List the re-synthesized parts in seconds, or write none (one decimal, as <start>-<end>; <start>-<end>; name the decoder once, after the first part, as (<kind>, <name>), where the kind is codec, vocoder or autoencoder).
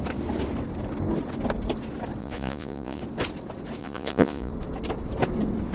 2.2-3.0 (vocoder, Vocos); 3.8-4.5